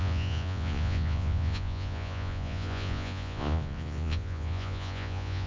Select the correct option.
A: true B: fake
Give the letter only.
B